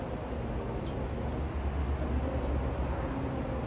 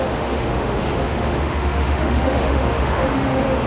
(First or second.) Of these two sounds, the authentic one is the first